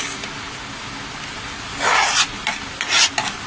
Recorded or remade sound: recorded